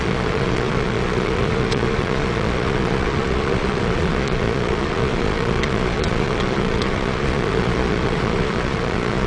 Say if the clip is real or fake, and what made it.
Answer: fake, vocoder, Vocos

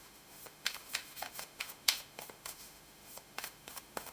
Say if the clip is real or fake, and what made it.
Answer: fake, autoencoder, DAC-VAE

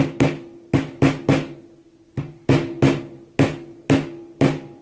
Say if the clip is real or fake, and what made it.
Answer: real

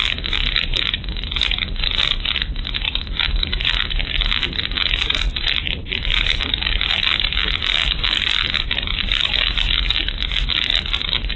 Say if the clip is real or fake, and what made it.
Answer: fake, vocoder, BigVGAN v2